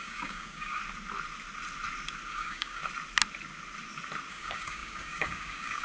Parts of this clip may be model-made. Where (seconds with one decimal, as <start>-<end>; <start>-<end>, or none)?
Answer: 0.0-0.8; 2.3-2.8; 4.3-5.8